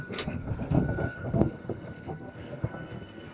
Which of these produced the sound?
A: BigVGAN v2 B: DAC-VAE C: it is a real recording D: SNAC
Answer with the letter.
D